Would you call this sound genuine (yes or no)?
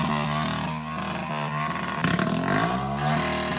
yes